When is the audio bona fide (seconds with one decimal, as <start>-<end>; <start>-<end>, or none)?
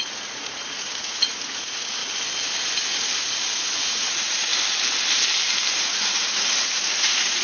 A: 2.0-3.9; 4.5-5.8